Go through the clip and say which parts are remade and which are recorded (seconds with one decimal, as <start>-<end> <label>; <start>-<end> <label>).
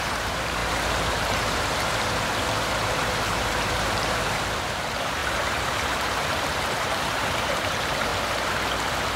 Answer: 0.0-8.1 remade; 8.1-9.2 recorded